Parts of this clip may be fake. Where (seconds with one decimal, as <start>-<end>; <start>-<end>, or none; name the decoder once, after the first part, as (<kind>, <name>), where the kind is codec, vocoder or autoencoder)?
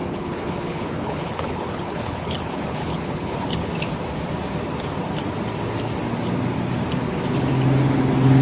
0.0-3.7 (codec, HILCodec)